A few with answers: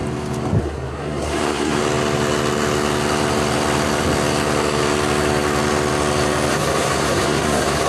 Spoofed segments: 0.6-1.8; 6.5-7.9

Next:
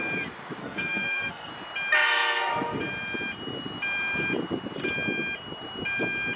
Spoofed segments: 0.6-1.5

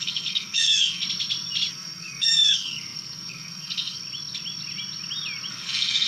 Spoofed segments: 0.0-1.0; 1.7-4.0; 5.5-6.1

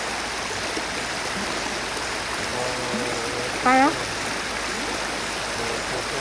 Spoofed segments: none

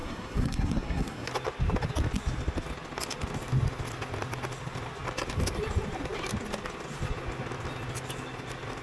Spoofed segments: 0.0-1.3

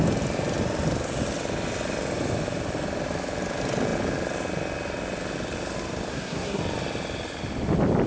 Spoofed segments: 6.1-6.6

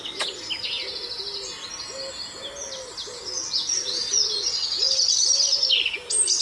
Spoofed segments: none

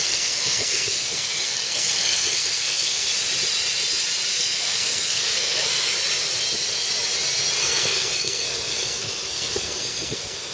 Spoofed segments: 0.0-3.1; 4.3-5.9; 7.6-10.5